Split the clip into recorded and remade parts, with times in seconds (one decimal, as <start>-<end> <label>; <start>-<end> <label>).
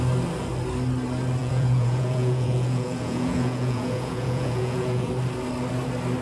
0.0-1.4 recorded; 1.4-5.1 remade; 5.1-6.2 recorded